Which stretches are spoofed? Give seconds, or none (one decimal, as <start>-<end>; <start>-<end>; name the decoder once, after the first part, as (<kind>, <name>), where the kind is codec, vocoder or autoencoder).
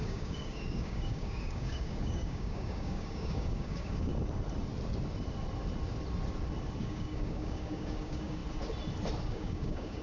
0.0-4.1 (codec, DAC); 6.8-8.4; 9.3-10.0